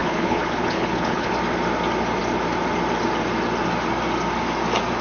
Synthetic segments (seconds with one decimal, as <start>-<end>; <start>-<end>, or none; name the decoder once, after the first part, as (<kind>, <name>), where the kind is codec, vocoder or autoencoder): 0.0-1.3 (codec, HILCodec)